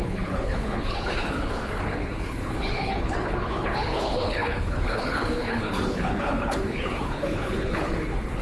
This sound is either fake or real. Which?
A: fake